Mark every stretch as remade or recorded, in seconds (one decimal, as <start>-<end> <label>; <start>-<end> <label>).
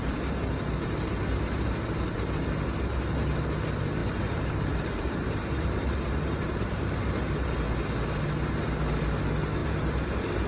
0.0-4.0 recorded; 4.0-6.9 remade; 6.9-10.5 recorded